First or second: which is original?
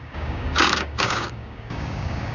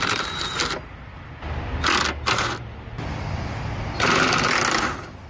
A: second